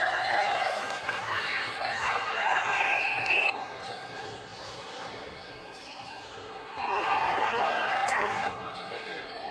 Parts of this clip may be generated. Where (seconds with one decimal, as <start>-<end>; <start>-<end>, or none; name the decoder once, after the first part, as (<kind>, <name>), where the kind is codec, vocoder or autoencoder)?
0.0-9.5 (codec, SNAC)